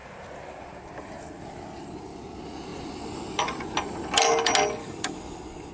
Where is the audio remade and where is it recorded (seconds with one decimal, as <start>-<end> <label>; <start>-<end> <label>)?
0.0-4.8 recorded; 4.8-5.7 remade